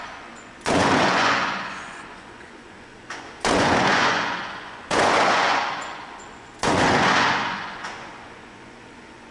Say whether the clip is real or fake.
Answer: fake